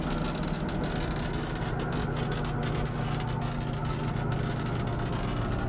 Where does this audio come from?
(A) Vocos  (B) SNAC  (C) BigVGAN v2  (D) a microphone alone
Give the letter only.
D